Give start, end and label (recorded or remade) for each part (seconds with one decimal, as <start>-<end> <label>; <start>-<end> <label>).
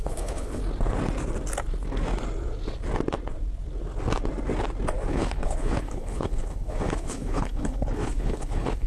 0.0-0.6 remade; 0.6-5.1 recorded; 5.1-8.9 remade